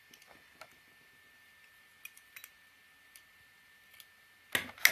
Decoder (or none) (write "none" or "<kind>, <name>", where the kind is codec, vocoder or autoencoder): none